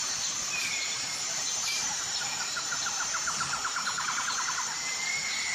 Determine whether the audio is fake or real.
fake